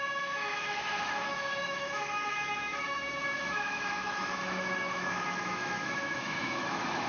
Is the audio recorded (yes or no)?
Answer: no